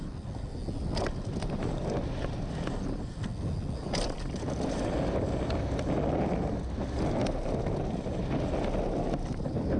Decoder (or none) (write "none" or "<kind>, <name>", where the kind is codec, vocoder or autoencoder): none